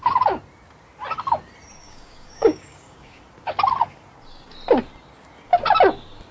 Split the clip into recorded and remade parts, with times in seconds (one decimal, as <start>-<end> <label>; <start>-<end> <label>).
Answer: 0.0-1.8 recorded; 1.8-3.2 remade; 3.2-6.3 recorded